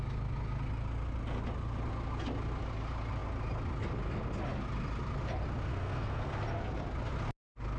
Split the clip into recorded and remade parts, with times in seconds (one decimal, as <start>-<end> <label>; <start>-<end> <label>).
0.0-5.7 recorded; 5.7-6.4 remade; 6.4-7.8 recorded